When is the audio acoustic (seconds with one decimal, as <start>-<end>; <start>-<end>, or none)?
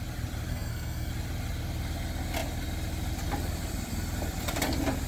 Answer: 0.0-0.5; 1.1-5.1